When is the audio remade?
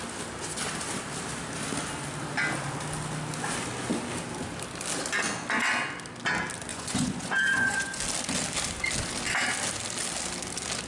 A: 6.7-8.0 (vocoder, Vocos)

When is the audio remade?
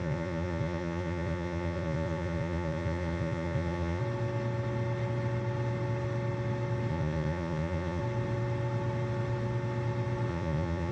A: 0.0-4.0 (vocoder, Vocos); 6.9-8.0; 10.3-10.9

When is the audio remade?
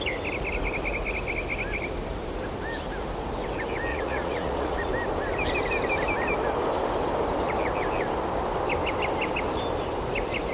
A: 3.9-4.9 (vocoder, Vocos)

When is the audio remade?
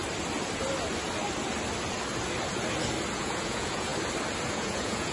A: 3.1-3.9 (vocoder, Vocos); 4.5-5.1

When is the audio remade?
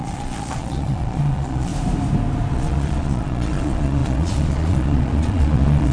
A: 0.0-1.7 (vocoder, Vocos); 2.5-5.9